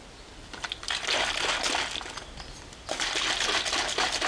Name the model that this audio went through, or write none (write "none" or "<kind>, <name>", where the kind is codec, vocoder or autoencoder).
none